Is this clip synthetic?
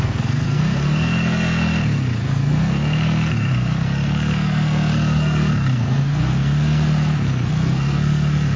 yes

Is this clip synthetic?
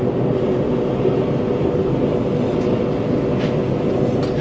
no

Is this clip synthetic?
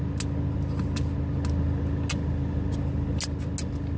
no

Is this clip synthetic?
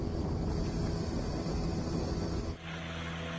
no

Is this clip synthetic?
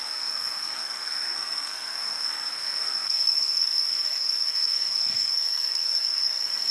yes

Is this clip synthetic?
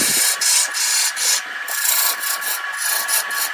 no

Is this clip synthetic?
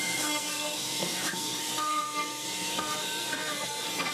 yes